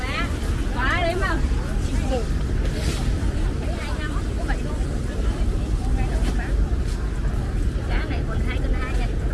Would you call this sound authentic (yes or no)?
no